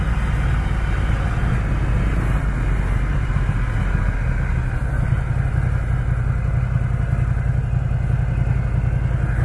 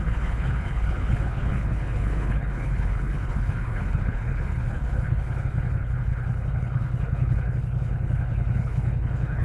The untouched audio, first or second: first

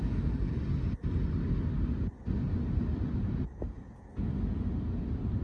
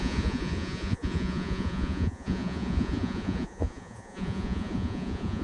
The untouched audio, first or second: first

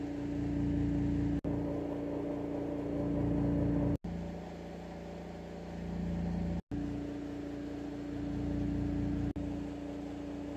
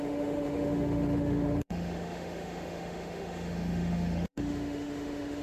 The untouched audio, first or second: first